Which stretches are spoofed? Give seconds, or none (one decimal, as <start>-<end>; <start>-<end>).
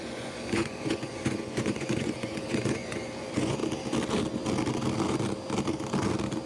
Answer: 0.0-3.6